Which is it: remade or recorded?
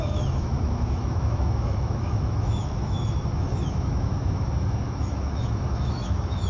remade